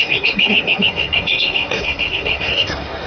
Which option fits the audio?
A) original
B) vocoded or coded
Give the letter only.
B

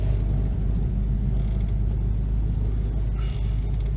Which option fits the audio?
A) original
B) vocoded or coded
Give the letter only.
A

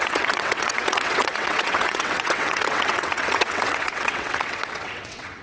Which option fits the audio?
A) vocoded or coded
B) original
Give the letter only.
A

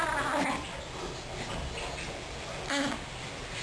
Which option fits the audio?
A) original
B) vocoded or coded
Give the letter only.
A